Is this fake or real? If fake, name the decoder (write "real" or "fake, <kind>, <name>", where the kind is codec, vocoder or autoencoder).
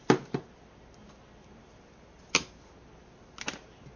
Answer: real